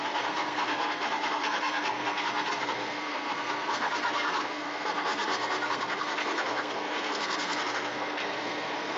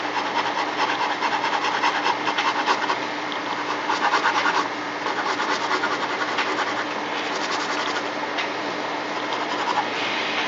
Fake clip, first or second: first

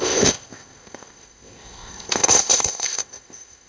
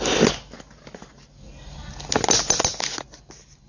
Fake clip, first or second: first